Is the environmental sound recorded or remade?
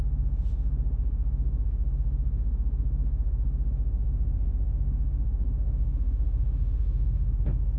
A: remade